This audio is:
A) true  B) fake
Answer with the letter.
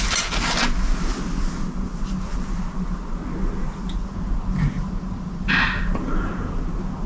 A